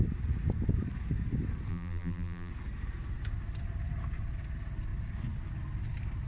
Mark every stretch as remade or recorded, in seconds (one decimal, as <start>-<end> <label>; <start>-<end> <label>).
0.0-1.7 recorded; 1.7-2.5 remade; 2.5-6.3 recorded